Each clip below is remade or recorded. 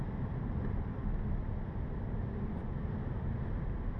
remade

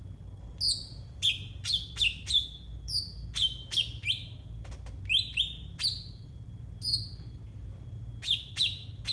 recorded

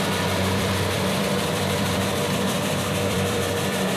remade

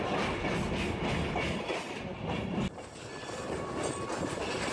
recorded